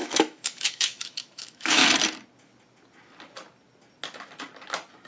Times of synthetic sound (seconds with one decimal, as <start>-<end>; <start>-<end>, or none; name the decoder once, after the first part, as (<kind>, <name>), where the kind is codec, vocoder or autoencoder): 0.0-1.8 (autoencoder, DAC-VAE)